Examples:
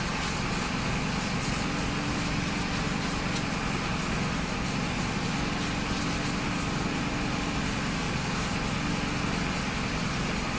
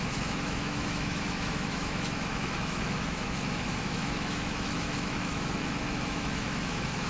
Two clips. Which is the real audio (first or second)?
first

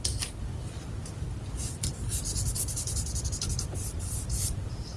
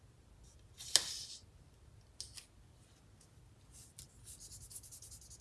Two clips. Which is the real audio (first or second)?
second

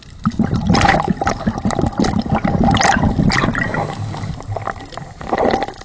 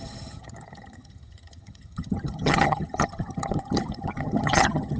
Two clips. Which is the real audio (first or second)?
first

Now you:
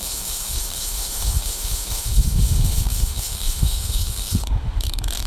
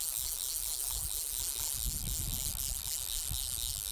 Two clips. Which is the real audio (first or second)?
second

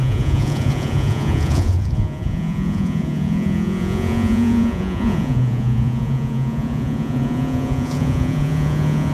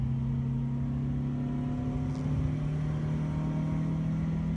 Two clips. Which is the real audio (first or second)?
second